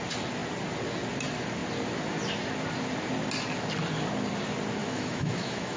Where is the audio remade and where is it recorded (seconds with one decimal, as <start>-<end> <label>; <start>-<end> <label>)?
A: 0.0-4.8 recorded; 4.8-5.8 remade

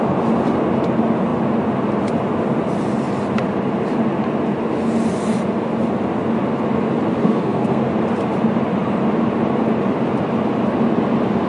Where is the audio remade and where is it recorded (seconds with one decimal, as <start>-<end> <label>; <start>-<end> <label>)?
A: 0.0-7.2 recorded; 7.2-7.9 remade; 7.9-11.5 recorded

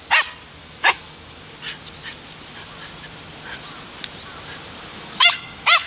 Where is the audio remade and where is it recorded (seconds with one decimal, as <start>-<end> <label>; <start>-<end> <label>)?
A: 0.0-0.6 recorded; 0.6-1.5 remade; 1.5-4.9 recorded; 4.9-5.9 remade

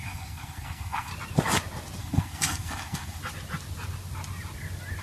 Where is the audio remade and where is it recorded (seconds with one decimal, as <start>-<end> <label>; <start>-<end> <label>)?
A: 0.0-1.1 remade; 1.1-2.0 recorded; 2.0-3.2 remade; 3.2-5.0 recorded